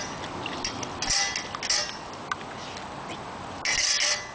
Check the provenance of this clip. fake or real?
real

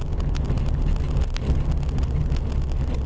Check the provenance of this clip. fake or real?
real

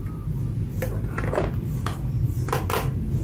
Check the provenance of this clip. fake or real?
real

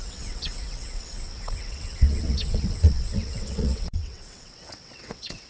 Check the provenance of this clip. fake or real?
fake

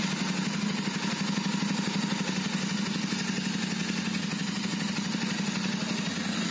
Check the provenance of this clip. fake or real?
real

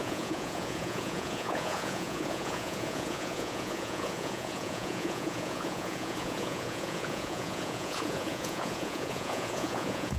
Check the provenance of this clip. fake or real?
fake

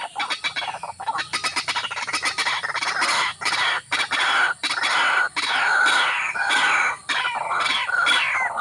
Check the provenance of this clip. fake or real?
fake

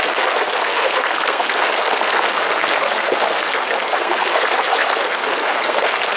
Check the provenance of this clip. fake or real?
fake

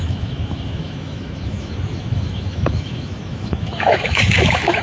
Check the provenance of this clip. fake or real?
fake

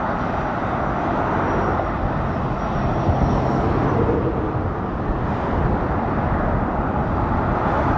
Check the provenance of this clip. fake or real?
real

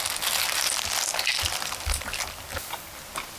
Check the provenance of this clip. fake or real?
real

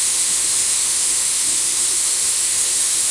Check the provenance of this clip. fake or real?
fake